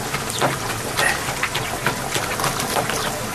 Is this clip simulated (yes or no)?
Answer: no